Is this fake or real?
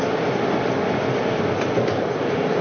real